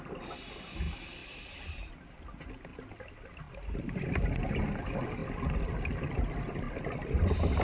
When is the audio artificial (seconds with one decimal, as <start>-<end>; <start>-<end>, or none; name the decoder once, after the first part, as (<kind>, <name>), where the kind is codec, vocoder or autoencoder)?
1.2-1.9 (vocoder, BigVGAN v2)